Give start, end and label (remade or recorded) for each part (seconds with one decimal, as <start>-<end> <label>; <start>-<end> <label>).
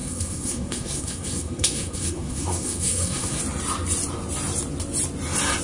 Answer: 0.0-3.4 remade; 3.4-5.6 recorded